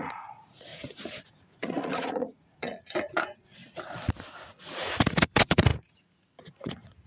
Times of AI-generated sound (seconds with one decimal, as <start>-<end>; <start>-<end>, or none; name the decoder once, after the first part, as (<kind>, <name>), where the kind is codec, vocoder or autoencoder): 0.0-3.6 (vocoder, Vocos); 4.6-7.1